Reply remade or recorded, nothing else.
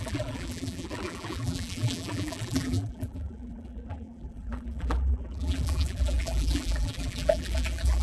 remade